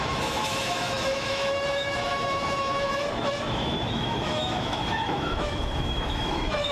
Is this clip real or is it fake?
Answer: fake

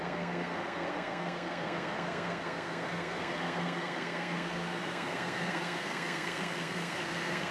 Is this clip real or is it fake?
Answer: fake